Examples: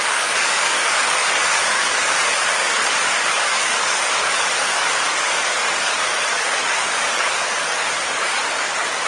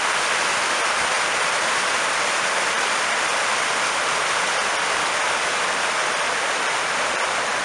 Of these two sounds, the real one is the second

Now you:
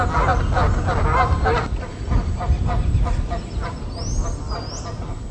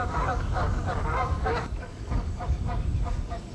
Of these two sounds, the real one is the first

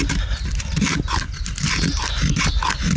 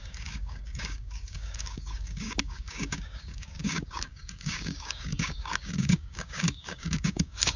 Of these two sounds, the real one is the first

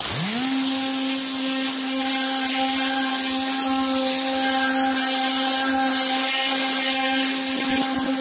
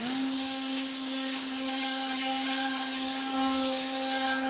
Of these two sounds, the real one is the first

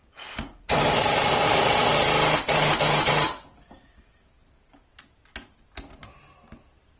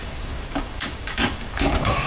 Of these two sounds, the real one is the first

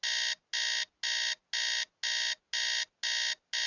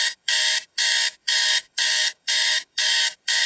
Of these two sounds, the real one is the first